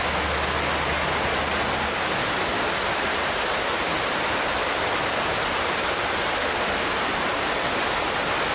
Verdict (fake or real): real